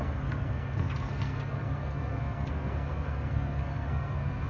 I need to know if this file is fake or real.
fake